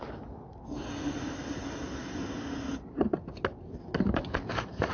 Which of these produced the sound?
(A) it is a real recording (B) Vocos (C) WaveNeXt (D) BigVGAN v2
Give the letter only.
A